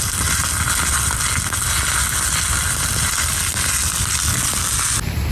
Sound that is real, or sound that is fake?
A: real